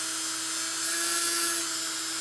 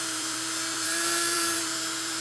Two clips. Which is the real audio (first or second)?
first